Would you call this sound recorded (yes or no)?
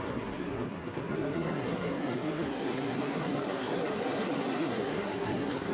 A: no